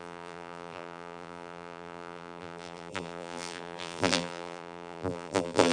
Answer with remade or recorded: remade